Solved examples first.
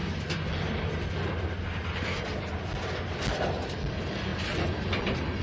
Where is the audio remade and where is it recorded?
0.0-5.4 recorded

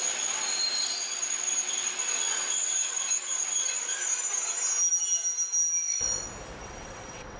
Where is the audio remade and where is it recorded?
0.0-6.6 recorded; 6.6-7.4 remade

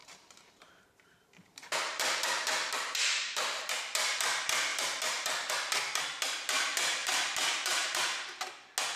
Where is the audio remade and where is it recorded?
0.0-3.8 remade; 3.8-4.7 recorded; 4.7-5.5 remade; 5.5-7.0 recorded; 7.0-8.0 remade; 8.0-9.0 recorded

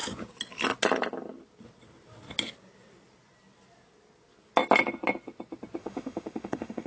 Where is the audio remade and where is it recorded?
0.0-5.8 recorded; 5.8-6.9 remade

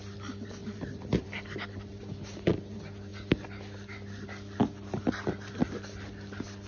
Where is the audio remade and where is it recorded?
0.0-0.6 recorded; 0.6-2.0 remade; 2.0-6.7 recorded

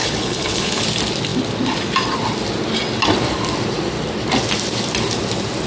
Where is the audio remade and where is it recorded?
0.0-0.8 remade; 0.8-5.7 recorded